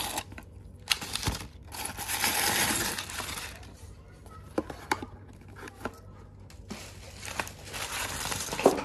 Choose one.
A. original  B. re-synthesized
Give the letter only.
A